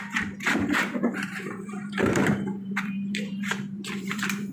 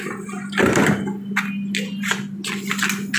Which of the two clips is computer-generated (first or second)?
first